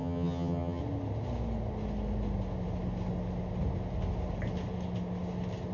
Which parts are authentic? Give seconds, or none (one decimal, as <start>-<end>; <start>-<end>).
0.8-5.7